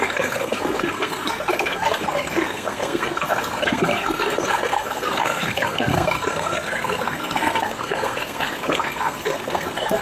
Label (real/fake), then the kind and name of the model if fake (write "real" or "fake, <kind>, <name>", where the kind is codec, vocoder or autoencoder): fake, codec, SNAC